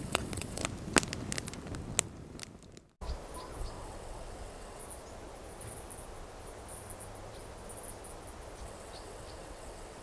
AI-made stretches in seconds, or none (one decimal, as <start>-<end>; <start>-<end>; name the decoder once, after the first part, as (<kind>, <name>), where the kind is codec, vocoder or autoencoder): 0.0-0.6 (vocoder, WaveNeXt); 3.6-4.8; 8.6-10.0